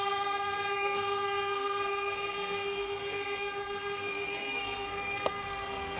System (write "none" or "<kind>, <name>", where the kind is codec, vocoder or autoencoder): codec, SNAC